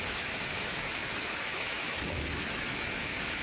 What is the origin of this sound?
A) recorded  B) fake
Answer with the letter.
B